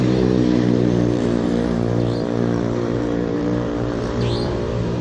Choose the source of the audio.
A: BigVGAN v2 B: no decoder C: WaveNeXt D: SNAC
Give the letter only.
A